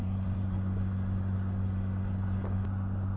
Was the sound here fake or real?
real